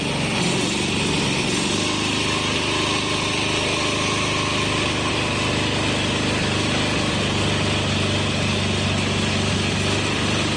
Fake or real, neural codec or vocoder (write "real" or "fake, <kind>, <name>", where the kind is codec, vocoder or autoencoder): real